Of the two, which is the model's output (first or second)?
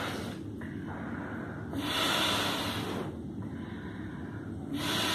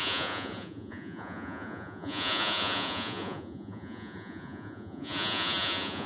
second